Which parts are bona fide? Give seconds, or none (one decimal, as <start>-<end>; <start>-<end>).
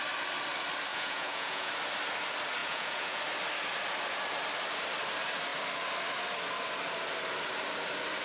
0.0-0.9; 1.7-2.6; 3.2-8.2